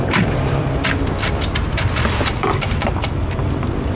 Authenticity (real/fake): fake